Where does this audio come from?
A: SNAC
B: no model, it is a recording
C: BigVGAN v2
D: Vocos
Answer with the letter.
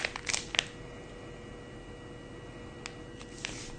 B